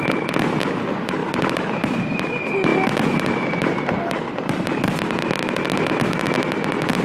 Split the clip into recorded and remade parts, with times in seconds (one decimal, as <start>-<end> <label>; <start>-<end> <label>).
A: 0.0-7.0 recorded